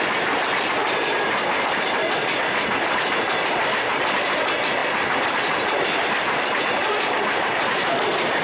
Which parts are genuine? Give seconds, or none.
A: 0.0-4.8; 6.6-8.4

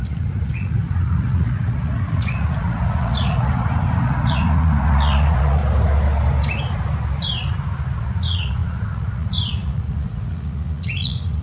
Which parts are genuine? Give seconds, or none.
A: 5.6-8.0

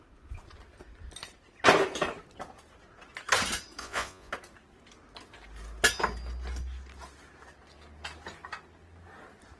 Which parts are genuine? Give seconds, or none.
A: 0.0-3.8; 4.3-9.6

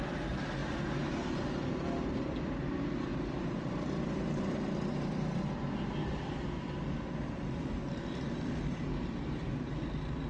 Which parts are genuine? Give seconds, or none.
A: 0.0-3.1; 5.4-10.3

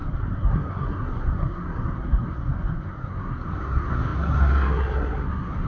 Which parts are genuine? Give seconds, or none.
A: none